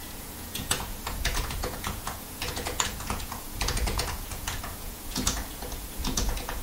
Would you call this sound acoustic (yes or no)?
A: no